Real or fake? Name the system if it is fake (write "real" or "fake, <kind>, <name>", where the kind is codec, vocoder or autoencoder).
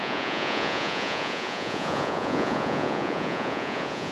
fake, vocoder, Vocos